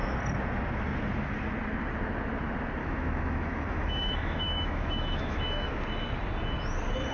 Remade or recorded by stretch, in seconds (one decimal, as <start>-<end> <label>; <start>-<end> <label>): 0.0-2.8 recorded; 2.8-5.8 remade; 5.8-7.1 recorded